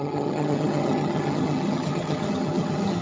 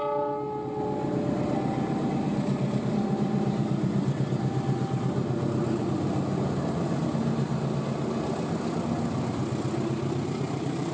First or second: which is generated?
first